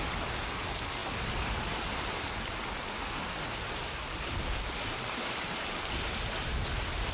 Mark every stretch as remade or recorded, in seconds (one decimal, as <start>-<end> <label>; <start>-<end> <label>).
0.0-7.1 recorded